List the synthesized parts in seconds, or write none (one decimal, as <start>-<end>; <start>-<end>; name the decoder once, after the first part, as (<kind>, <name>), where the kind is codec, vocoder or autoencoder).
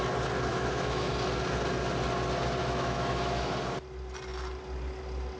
0.5-1.1 (autoencoder, DAC-VAE); 2.6-3.5